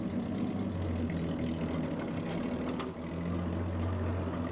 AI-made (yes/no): no